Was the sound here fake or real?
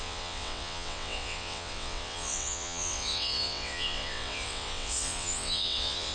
fake